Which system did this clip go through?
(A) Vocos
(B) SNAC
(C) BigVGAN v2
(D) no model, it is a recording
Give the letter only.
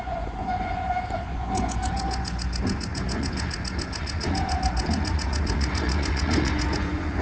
A